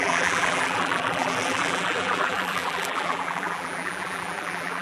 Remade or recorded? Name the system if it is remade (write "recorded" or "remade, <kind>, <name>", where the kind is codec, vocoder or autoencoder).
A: remade, vocoder, BigVGAN v2